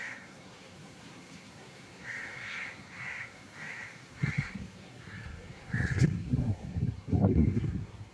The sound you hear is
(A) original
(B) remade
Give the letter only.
B